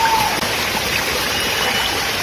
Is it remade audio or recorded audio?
recorded